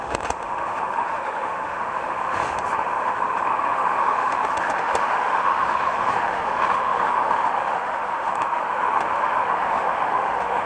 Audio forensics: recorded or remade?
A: remade